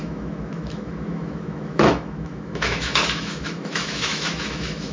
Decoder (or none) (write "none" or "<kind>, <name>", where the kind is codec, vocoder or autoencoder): autoencoder, DAC-VAE